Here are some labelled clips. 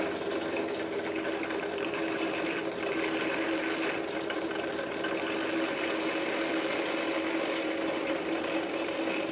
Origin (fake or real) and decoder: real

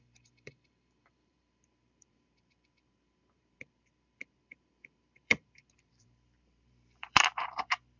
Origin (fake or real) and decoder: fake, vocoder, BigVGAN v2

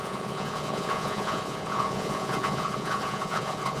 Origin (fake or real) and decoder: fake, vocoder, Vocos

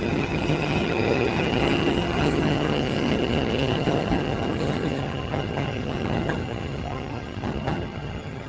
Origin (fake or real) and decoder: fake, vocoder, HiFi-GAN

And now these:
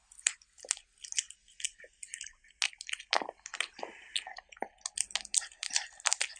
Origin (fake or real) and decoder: real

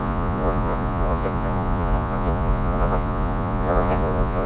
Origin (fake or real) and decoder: fake, vocoder, Vocos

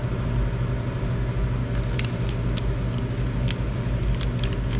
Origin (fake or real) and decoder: real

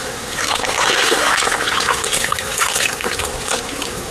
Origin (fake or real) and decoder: fake, codec, SNAC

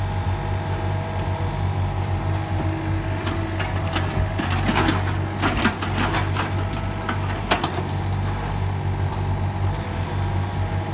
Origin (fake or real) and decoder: real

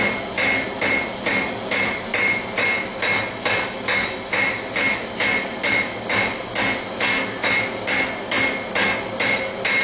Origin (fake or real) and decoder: real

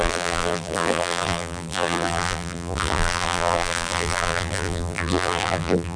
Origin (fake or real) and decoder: fake, vocoder, BigVGAN v2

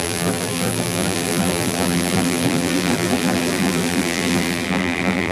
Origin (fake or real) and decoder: fake, vocoder, BigVGAN v2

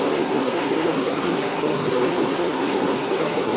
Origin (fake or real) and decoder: fake, codec, SNAC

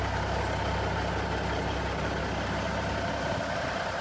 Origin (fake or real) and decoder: real